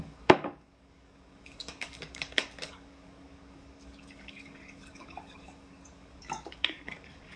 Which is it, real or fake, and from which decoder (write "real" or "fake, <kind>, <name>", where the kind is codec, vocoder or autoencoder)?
fake, codec, DAC